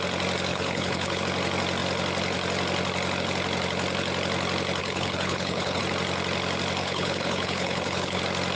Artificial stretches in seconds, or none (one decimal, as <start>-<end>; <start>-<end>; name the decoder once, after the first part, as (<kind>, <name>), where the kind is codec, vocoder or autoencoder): 0.5-1.2 (codec, HILCodec); 4.8-5.8; 6.8-8.2